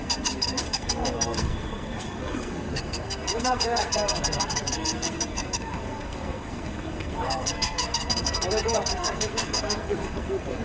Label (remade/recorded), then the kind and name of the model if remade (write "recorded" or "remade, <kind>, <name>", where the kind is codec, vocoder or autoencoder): remade, codec, SNAC